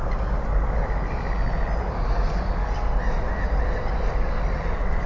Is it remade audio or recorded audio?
recorded